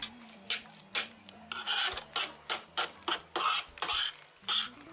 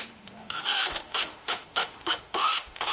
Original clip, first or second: first